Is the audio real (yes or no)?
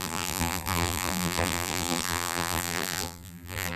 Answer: no